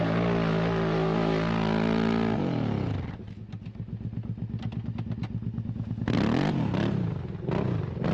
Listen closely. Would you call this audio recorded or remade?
recorded